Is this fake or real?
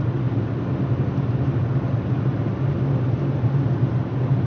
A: real